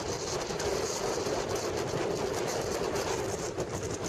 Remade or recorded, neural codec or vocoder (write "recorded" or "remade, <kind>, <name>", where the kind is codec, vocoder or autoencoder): recorded